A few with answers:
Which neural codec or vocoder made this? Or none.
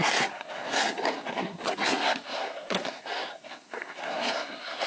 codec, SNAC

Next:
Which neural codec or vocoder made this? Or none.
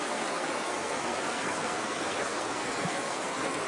codec, SNAC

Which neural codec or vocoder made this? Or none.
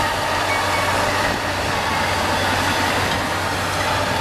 none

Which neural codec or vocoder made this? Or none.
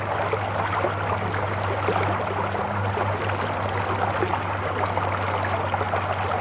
none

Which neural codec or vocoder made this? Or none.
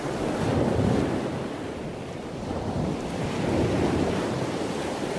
none